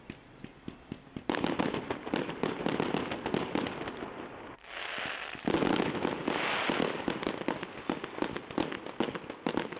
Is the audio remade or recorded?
recorded